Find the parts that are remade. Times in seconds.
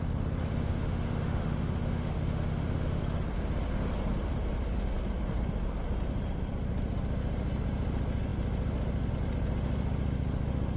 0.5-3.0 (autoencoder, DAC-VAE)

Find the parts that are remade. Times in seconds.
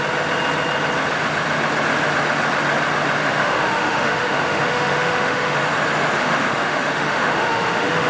3.2-5.6 (autoencoder, DAC-VAE); 6.2-8.1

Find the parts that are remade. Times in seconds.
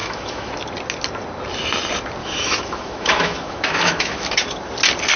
0.0-0.5 (autoencoder, DAC-VAE); 2.2-4.3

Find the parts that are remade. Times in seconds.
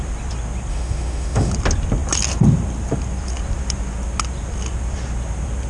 0.7-1.5 (autoencoder, DAC-VAE)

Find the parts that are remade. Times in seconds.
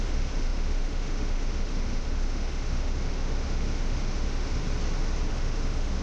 0.0-4.6 (autoencoder, DAC-VAE); 5.3-6.0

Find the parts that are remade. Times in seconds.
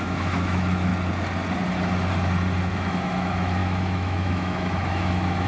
0.0-0.9 (autoencoder, DAC-VAE); 2.7-5.5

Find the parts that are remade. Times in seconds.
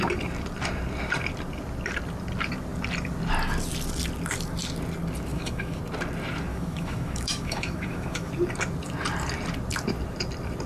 5.3-5.8 (autoencoder, DAC-VAE); 6.5-8.3